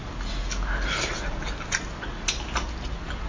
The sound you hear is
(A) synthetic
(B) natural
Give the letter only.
B